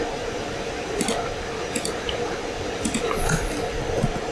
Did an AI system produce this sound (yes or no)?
no